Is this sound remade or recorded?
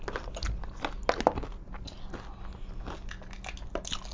recorded